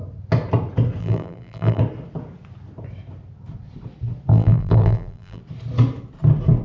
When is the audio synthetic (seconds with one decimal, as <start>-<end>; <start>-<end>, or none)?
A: 1.0-1.8; 4.3-5.4